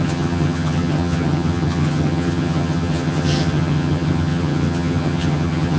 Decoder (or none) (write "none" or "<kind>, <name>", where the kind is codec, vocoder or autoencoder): vocoder, HiFi-GAN